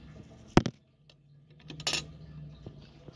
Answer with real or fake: real